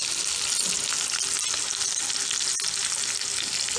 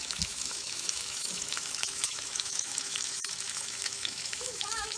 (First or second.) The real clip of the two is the first